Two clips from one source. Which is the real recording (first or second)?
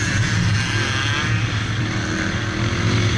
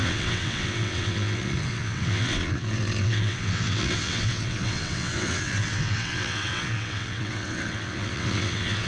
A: first